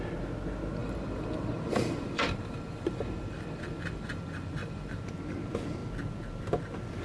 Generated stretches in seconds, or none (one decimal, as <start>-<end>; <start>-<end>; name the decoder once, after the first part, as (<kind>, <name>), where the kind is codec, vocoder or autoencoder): 0.8-5.0 (vocoder, BigVGAN v2)